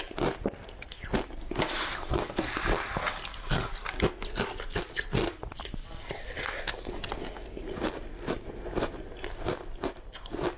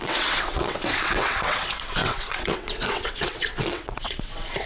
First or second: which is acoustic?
first